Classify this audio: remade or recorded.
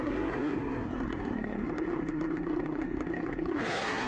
remade